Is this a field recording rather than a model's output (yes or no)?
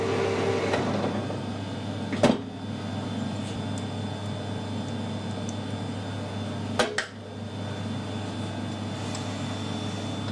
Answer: yes